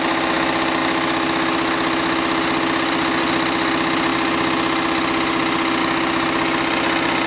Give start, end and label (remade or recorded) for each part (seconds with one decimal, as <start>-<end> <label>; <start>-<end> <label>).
0.0-7.3 recorded